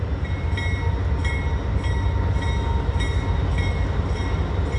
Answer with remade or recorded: recorded